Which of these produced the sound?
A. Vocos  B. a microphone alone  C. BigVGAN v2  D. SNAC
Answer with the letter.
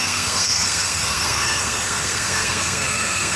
D